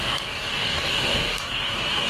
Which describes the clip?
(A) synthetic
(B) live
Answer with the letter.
A